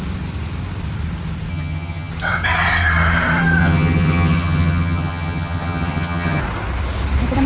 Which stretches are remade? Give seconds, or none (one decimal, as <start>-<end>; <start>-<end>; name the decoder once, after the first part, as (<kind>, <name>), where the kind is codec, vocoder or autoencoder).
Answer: 1.5-2.1 (vocoder, HiFi-GAN); 3.6-6.4